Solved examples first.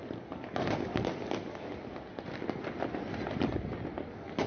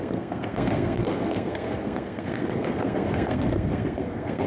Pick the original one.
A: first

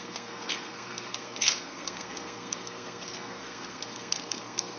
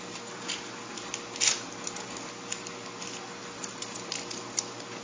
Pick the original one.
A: second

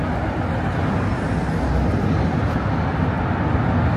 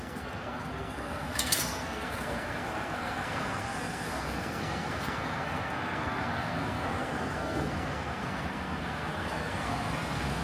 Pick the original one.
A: first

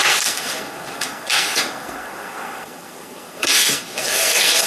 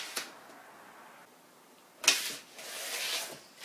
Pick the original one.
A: second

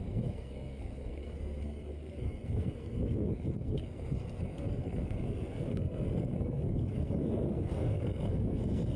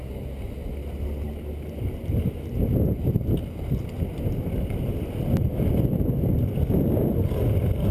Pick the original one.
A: second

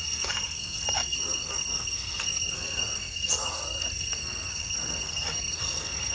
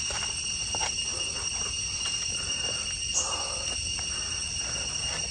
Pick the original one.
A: second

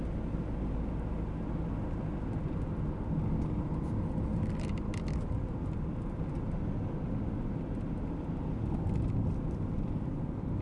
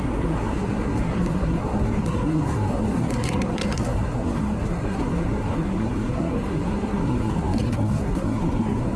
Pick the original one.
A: first